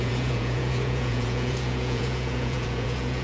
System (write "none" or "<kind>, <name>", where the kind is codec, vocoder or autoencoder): vocoder, Vocos